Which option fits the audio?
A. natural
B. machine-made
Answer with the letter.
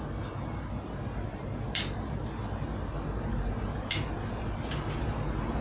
A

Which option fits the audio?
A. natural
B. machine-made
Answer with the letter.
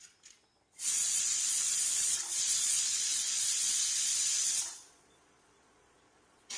B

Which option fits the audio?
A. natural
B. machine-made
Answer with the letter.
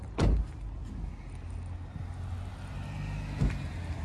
A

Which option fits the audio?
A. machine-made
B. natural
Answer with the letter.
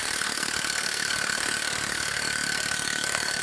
A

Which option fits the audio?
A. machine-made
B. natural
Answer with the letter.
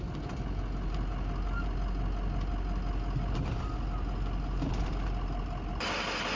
B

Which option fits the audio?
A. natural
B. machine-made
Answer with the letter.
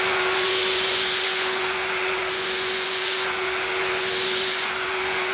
B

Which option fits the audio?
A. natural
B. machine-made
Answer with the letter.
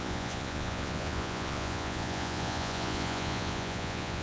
B